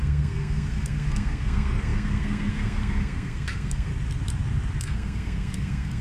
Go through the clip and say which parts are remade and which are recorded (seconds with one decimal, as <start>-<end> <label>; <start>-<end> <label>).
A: 0.0-3.9 remade; 3.9-4.8 recorded; 4.8-6.0 remade